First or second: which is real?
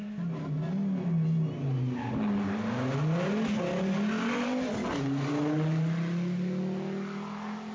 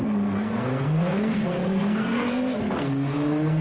first